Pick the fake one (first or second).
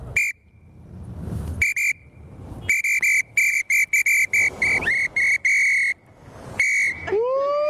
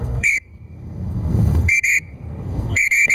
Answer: second